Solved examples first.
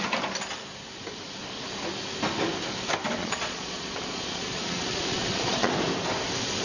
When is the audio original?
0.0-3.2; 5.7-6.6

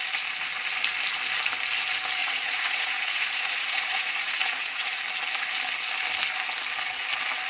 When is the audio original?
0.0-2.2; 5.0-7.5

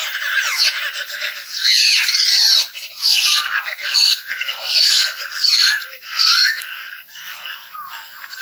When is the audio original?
0.0-0.9; 1.8-2.9

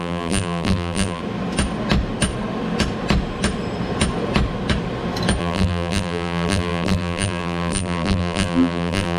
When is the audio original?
1.2-5.4

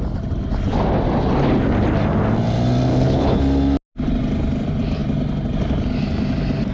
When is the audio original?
0.0-2.9; 3.4-6.7

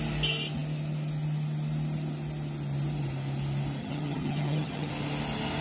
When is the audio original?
0.0-3.8; 4.9-5.6

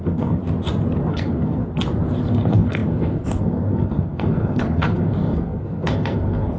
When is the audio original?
0.4-1.1; 1.6-2.2